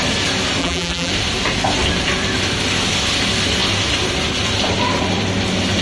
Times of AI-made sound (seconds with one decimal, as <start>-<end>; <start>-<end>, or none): 0.6-1.1